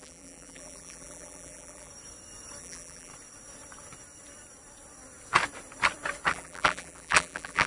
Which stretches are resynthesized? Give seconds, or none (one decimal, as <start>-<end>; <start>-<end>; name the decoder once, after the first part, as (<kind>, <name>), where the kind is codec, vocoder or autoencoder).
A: 0.0-1.9 (vocoder, BigVGAN v2); 2.6-3.1; 6.3-7.7